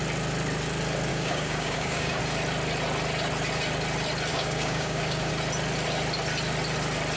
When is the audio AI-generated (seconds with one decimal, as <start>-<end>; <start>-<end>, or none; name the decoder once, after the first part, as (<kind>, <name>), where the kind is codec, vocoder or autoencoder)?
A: 1.1-2.2 (codec, DAC); 4.3-5.3